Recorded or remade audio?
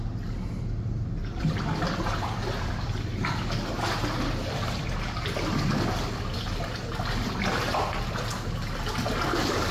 recorded